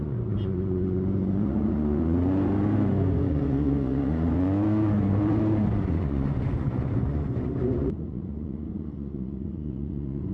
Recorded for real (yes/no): no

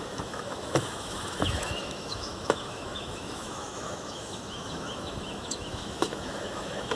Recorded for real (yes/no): no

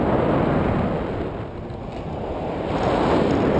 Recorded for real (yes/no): yes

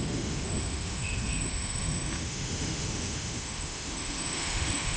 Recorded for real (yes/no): no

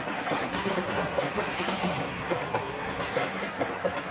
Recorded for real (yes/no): no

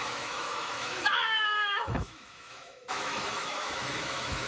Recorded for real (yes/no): no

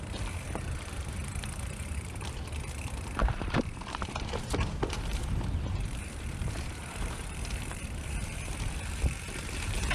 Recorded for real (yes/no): no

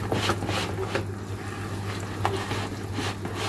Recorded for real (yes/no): yes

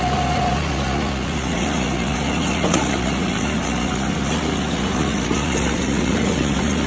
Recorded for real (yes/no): no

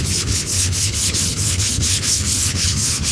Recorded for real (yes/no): no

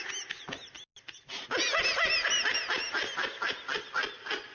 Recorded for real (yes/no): yes